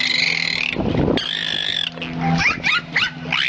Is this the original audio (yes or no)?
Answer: yes